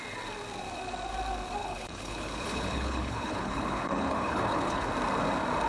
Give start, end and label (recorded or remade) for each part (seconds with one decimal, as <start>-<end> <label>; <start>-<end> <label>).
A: 0.0-1.6 recorded; 1.6-4.9 remade; 4.9-5.7 recorded